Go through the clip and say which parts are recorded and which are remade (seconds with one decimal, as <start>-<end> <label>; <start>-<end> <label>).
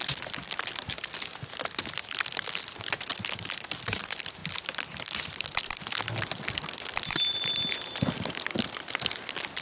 0.0-9.6 recorded